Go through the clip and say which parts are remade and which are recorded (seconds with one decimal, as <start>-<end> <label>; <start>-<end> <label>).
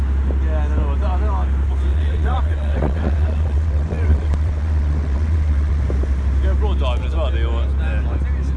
0.0-1.9 recorded; 1.9-5.8 remade; 5.8-8.6 recorded